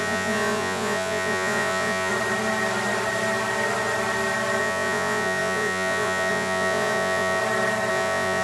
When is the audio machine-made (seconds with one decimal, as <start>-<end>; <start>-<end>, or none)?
0.0-2.1; 4.6-7.4; 7.9-8.4